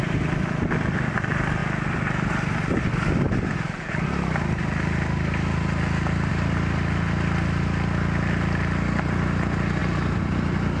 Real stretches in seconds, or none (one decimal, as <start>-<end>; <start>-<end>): 0.0-10.8